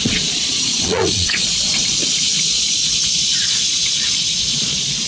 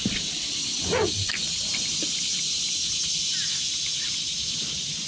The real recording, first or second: second